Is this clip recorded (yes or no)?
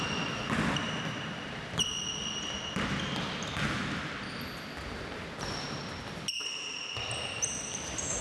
yes